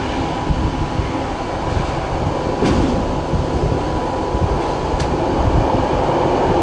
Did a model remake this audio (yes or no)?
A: no